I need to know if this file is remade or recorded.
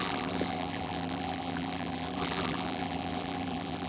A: remade